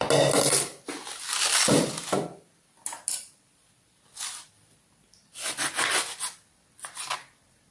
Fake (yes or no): no